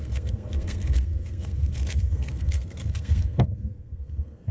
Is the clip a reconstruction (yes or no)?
yes